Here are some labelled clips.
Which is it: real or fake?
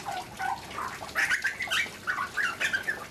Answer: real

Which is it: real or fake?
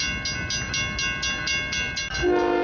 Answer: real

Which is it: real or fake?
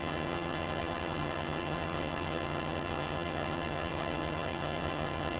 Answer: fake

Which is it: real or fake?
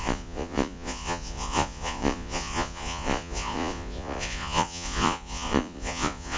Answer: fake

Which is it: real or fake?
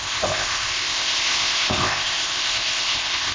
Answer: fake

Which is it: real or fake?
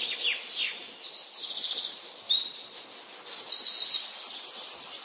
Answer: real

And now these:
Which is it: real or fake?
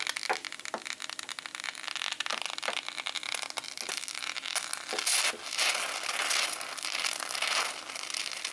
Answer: real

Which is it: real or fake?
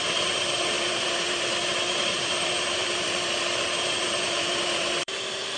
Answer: fake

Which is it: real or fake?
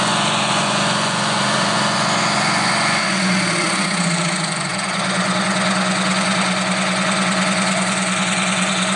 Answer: fake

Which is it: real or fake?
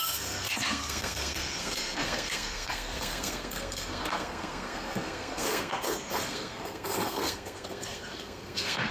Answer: fake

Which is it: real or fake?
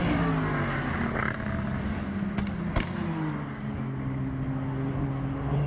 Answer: real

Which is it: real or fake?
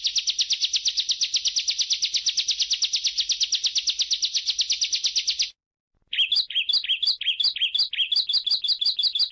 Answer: real